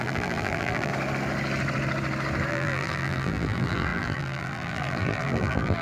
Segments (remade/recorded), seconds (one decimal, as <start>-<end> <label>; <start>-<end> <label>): 0.0-0.9 remade; 0.9-2.5 recorded; 2.5-5.8 remade